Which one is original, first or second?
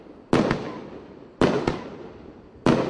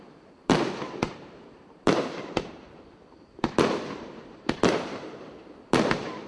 first